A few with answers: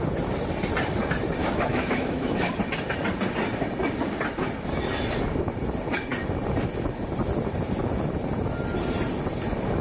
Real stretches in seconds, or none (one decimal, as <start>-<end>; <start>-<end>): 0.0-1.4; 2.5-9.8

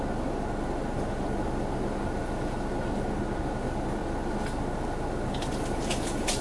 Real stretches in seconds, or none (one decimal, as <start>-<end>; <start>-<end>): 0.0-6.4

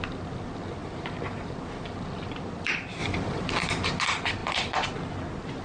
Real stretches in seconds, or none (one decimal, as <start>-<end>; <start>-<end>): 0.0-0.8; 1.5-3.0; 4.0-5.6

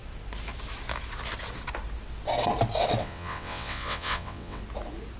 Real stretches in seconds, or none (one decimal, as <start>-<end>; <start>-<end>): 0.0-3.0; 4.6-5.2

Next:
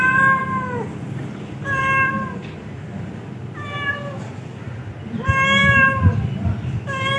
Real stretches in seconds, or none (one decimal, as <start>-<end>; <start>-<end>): 0.0-7.2

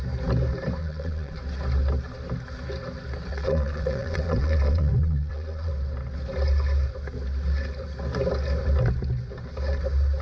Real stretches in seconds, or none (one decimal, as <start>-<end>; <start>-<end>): 0.0-0.8; 1.4-3.3; 5.7-10.2